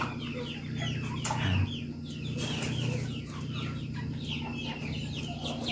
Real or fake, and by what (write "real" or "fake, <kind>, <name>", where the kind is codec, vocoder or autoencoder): real